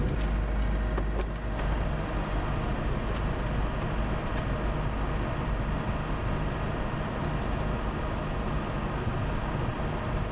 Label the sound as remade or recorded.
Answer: recorded